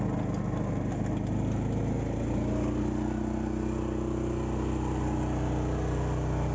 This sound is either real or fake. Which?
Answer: real